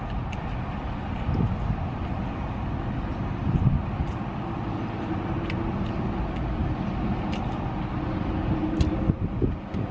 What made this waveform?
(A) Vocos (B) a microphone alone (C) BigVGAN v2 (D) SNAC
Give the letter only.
B